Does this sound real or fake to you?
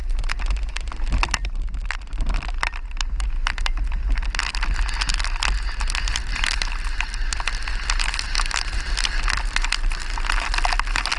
real